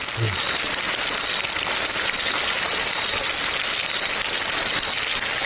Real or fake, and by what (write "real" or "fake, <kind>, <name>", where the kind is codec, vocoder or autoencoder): real